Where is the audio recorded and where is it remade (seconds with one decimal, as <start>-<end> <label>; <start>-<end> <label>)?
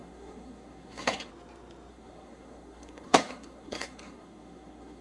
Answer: 0.0-1.3 remade; 1.3-1.9 recorded; 1.9-5.0 remade